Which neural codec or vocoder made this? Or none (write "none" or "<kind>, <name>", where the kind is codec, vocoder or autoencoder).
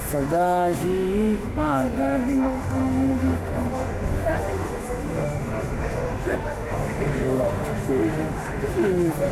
autoencoder, DAC-VAE